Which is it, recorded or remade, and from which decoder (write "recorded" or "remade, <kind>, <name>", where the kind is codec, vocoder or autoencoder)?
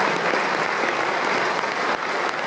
recorded